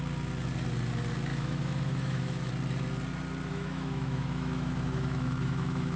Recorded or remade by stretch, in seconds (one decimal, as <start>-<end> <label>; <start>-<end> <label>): 0.0-1.3 recorded; 1.3-2.5 remade; 2.5-3.5 recorded; 3.5-6.0 remade